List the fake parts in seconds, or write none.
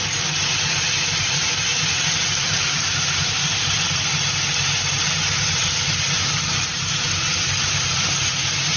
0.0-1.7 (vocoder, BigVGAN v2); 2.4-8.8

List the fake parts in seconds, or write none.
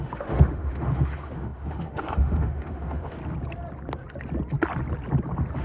0.0-3.2 (autoencoder, DAC-VAE)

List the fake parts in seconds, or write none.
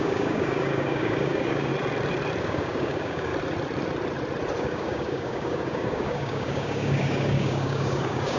0.0-1.7 (codec, DAC); 2.4-3.3; 4.6-8.4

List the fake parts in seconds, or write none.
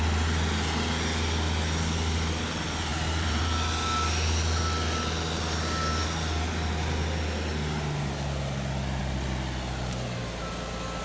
2.9-3.7 (vocoder, BigVGAN v2)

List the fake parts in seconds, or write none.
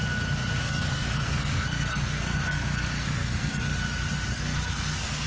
0.6-3.7 (codec, SNAC); 4.3-5.3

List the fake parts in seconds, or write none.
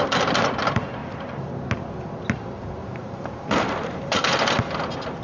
1.0-1.5 (vocoder, BigVGAN v2); 2.8-4.2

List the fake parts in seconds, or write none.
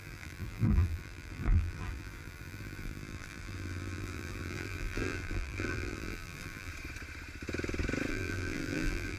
0.0-6.7 (vocoder, BigVGAN v2); 8.1-9.2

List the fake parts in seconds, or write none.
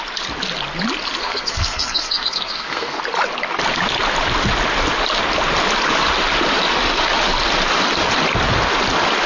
1.2-3.0 (codec, SNAC)